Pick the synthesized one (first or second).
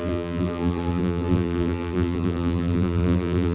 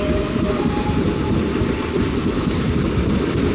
first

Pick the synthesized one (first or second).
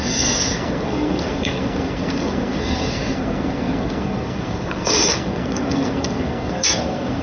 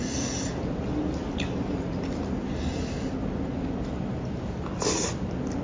first